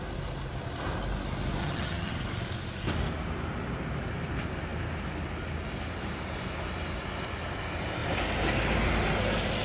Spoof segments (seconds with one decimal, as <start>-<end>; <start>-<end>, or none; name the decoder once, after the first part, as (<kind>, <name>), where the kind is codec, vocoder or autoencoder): 1.6-2.1 (vocoder, HiFi-GAN)